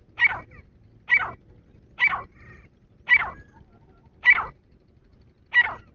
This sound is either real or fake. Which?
real